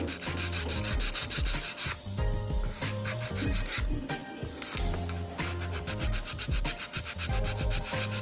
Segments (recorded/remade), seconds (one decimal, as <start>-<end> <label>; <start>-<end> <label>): 0.0-8.2 recorded

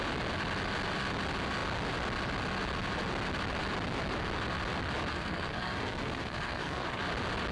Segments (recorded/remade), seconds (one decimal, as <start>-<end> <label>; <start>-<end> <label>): 0.0-5.1 recorded; 5.1-7.0 remade; 7.0-7.5 recorded

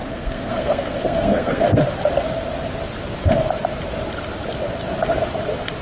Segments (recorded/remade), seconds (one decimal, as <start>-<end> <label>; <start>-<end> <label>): 0.0-1.8 remade; 1.8-5.8 recorded

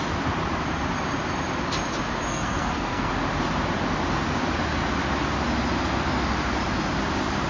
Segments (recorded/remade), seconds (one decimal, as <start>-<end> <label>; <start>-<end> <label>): 0.0-2.3 recorded; 2.3-3.1 remade; 3.1-7.5 recorded

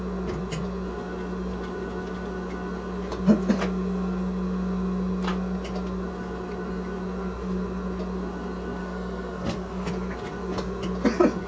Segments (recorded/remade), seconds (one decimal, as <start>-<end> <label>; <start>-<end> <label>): 0.0-8.8 recorded; 8.8-9.9 remade; 9.9-11.5 recorded

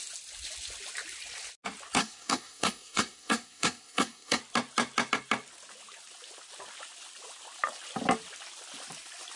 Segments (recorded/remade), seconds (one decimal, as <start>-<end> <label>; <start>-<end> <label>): 0.0-2.0 recorded; 2.0-4.4 remade; 4.4-9.4 recorded

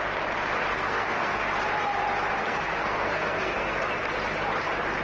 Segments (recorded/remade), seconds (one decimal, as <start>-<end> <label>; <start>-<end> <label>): 0.0-0.7 recorded; 0.7-1.4 remade; 1.4-2.4 recorded; 2.4-3.8 remade; 3.8-5.0 recorded